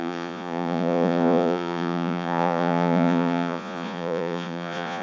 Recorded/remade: remade